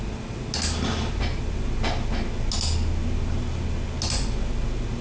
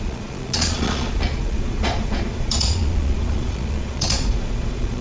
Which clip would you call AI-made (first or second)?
second